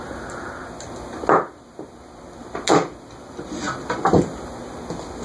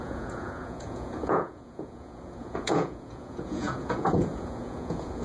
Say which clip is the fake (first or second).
second